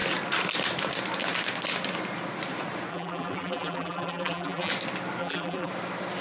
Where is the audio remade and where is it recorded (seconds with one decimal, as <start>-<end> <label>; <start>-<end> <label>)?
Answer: 0.0-2.9 recorded; 2.9-4.7 remade; 4.7-5.2 recorded; 5.2-5.7 remade; 5.7-6.2 recorded